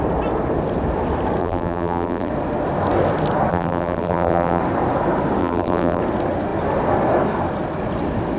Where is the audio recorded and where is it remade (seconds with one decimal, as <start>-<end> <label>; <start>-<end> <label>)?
0.0-1.4 recorded; 1.4-2.3 remade; 2.3-3.5 recorded; 3.5-4.6 remade; 4.6-5.4 recorded; 5.4-6.0 remade; 6.0-8.4 recorded